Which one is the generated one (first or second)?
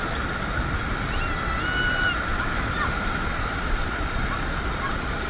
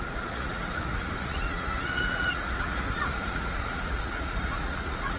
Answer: second